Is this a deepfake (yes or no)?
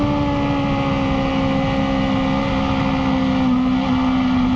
no